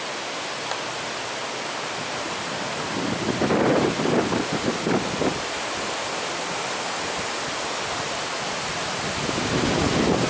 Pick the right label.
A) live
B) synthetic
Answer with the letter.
A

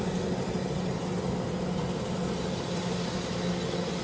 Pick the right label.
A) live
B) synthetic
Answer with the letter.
A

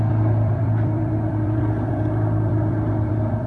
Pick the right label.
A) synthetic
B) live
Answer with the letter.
A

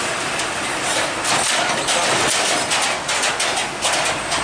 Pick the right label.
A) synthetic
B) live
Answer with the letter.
B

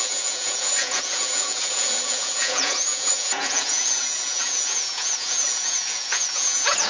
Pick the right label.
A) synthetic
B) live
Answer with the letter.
A